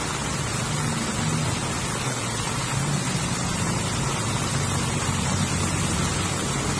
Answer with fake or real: real